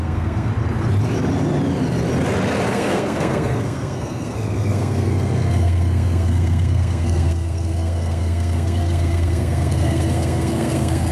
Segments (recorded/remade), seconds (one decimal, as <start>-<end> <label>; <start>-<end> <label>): 0.0-0.5 remade; 0.5-2.7 recorded; 2.7-11.1 remade